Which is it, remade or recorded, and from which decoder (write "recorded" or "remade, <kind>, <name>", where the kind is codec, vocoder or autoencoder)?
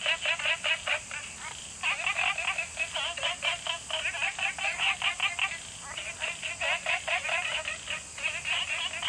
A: recorded